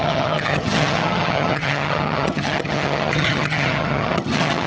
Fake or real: fake